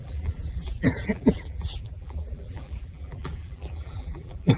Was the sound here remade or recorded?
remade